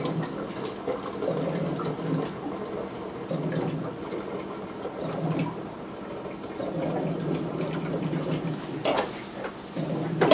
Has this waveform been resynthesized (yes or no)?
no